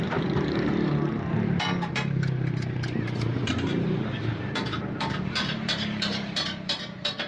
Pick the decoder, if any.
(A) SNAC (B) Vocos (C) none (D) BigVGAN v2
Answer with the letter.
D